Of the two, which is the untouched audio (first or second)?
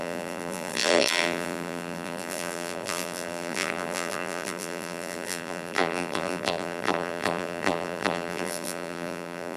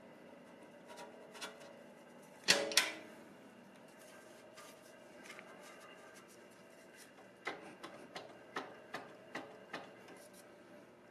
second